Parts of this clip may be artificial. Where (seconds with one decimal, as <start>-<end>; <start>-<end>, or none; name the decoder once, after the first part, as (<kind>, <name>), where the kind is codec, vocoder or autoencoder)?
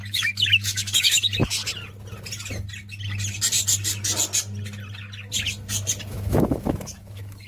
0.0-1.6 (autoencoder, DAC-VAE); 6.1-7.5